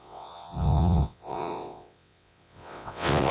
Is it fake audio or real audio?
fake